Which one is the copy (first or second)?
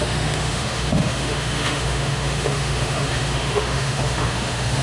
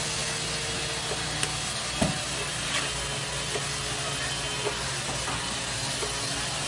first